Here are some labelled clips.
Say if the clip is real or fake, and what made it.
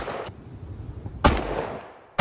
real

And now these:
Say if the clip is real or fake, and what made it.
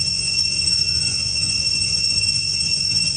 fake, vocoder, Vocos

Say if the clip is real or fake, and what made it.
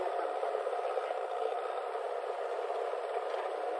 real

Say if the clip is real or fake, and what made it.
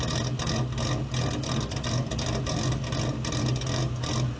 real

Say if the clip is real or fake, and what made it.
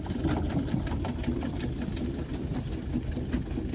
real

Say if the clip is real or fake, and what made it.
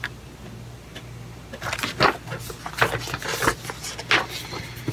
real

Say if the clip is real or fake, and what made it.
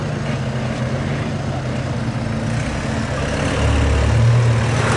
real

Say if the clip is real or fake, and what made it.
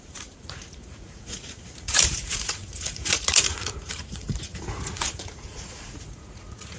fake, vocoder, Vocos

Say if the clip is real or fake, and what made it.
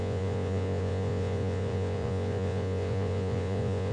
fake, vocoder, Vocos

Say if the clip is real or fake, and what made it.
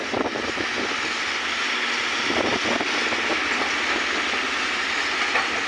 real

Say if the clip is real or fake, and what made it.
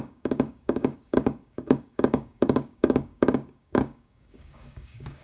fake, codec, DAC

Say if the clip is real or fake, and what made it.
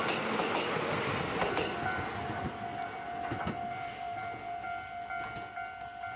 real